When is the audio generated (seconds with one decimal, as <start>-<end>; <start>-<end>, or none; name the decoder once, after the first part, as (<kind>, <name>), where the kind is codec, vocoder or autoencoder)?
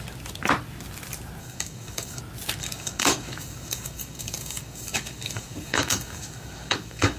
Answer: 1.4-2.2 (codec, DAC); 2.6-7.2